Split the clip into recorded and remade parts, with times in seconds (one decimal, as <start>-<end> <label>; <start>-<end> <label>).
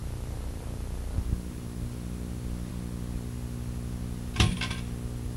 0.0-5.4 recorded